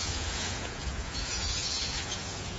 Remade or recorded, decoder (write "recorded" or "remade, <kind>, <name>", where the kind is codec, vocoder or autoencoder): remade, vocoder, Vocos